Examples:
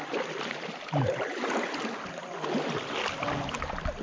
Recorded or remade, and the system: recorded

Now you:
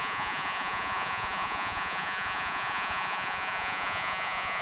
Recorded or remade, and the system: remade, vocoder, Vocos